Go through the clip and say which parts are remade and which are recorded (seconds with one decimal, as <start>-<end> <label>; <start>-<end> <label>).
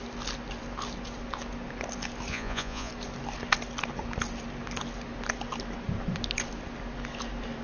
0.0-2.3 recorded; 2.3-2.9 remade; 2.9-7.6 recorded